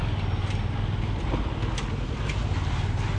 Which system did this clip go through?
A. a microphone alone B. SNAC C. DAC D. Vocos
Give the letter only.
A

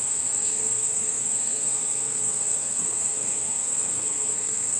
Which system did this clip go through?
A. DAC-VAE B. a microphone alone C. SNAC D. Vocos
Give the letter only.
C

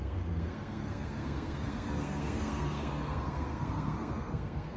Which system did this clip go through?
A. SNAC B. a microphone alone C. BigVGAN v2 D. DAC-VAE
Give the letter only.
A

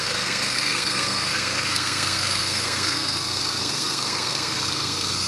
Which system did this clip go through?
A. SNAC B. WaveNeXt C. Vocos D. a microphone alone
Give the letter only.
A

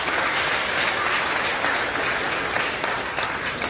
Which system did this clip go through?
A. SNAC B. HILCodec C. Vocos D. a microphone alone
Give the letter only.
D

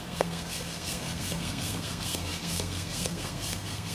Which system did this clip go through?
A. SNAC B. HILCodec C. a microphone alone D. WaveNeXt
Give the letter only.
A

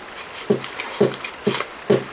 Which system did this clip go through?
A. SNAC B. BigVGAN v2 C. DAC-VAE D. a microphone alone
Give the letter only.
D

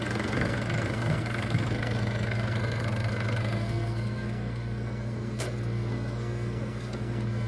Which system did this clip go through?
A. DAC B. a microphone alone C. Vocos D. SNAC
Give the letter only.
D